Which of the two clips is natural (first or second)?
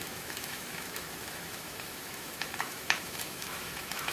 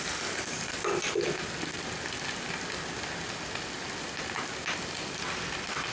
second